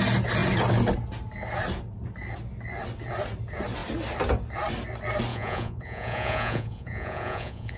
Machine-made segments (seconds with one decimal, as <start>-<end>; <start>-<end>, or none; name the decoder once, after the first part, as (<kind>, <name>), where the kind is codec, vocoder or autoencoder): 5.3-7.8 (vocoder, Vocos)